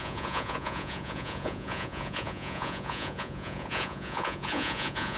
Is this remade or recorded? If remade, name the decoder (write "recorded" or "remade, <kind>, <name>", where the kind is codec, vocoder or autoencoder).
remade, vocoder, Vocos